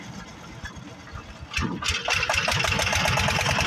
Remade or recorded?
recorded